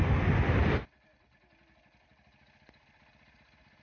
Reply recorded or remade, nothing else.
recorded